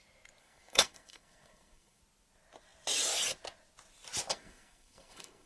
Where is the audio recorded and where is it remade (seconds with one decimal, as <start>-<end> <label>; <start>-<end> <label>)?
0.0-0.4 recorded; 0.4-2.0 remade; 2.0-4.3 recorded; 4.3-5.5 remade

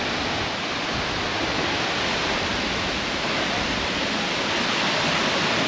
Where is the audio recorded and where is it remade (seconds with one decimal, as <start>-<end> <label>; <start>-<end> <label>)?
0.0-5.7 recorded

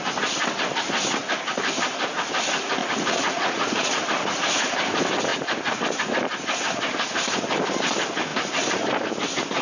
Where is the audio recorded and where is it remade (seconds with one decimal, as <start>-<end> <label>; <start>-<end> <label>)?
0.0-2.8 recorded; 2.8-4.0 remade; 4.0-9.6 recorded

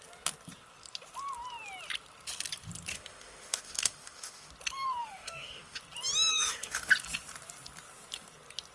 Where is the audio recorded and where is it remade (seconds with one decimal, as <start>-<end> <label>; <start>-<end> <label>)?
0.0-2.9 recorded; 2.9-4.5 remade; 4.5-5.0 recorded; 5.0-5.8 remade; 5.8-6.3 recorded; 6.3-6.9 remade; 6.9-8.7 recorded

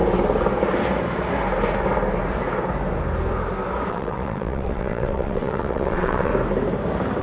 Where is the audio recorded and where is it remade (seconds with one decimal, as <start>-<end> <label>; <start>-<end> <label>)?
0.0-3.9 recorded; 3.9-6.3 remade; 6.3-7.2 recorded

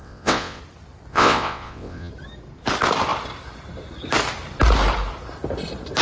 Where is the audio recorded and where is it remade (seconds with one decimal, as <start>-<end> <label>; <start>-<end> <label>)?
0.0-0.6 remade; 0.6-1.1 recorded; 1.1-2.1 remade; 2.1-6.0 recorded

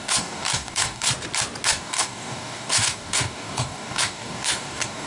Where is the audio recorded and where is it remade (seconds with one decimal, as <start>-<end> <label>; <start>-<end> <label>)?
0.0-1.1 remade; 1.1-1.7 recorded; 1.7-5.1 remade